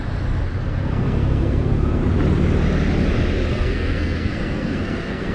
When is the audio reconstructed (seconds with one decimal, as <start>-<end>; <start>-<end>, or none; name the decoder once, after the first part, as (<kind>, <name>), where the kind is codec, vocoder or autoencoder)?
0.7-2.0 (codec, SNAC); 3.5-5.3